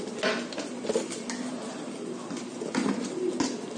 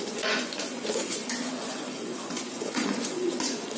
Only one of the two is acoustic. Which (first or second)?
first